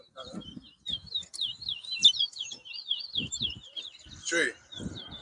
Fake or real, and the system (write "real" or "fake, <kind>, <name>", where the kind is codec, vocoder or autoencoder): real